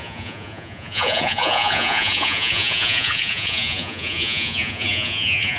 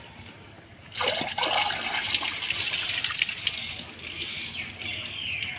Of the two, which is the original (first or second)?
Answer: second